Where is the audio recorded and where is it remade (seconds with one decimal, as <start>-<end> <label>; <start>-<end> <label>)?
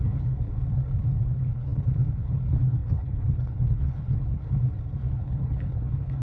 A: 0.0-0.6 remade; 0.6-1.2 recorded; 1.2-4.4 remade; 4.4-5.1 recorded; 5.1-6.2 remade